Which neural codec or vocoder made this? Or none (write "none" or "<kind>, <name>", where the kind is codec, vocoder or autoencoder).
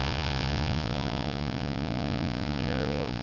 vocoder, Vocos